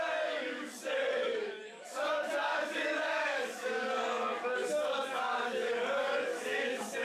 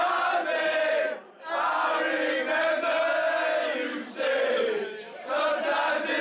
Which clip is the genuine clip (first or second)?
second